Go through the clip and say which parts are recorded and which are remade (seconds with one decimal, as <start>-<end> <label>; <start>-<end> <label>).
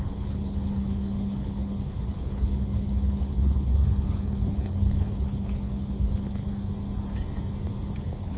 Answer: 0.0-6.5 remade; 6.5-8.0 recorded; 8.0-8.4 remade